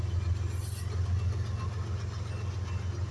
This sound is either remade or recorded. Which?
recorded